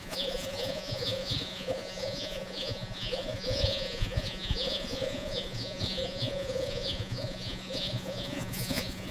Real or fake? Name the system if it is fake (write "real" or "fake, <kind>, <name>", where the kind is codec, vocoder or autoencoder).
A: fake, vocoder, Vocos